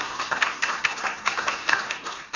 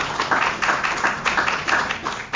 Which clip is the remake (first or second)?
first